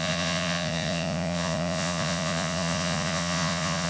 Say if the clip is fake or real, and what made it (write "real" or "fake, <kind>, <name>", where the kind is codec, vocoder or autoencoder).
fake, vocoder, Vocos